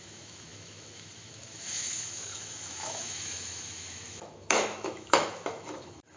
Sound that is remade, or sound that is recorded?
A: remade